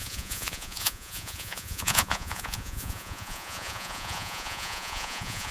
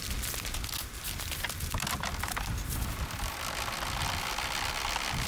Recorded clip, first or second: second